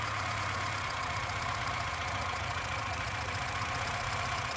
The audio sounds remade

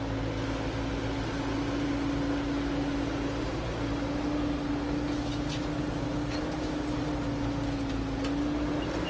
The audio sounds recorded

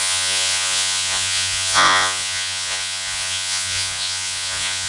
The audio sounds remade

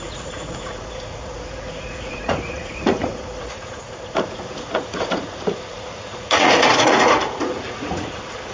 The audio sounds remade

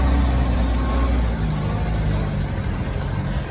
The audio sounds recorded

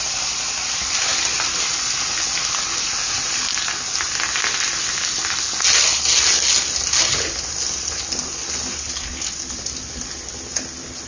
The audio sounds recorded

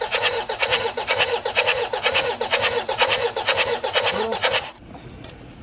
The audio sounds remade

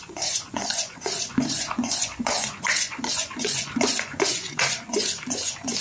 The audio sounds remade